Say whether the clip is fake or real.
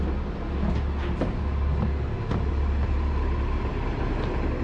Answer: real